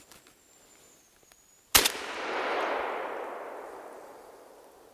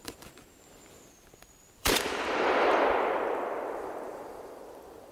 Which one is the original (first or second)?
first